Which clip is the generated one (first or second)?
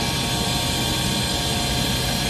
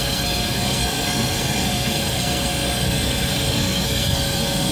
second